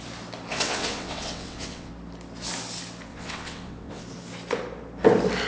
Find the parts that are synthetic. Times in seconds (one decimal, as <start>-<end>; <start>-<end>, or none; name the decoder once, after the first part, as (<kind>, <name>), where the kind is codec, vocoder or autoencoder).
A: 0.5-1.9 (vocoder, WaveNeXt); 3.1-4.0